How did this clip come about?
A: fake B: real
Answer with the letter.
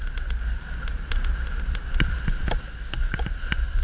B